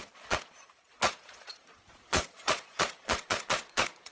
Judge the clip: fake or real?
fake